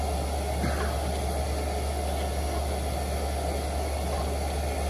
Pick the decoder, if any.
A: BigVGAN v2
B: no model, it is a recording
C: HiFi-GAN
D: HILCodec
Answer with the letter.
B